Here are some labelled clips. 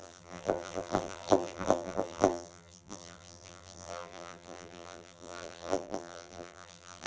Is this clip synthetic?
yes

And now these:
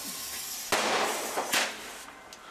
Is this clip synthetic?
no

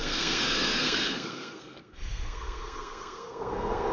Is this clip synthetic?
yes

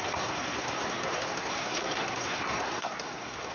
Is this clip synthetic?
yes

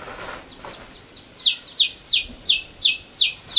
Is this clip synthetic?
no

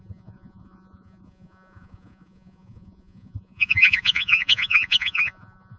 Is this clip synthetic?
yes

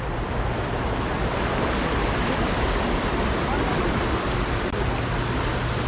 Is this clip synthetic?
no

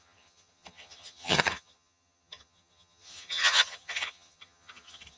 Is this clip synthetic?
yes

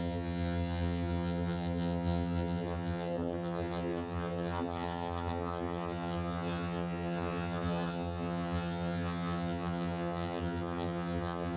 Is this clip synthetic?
yes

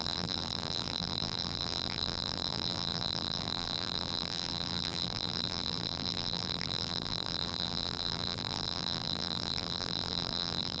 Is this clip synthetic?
yes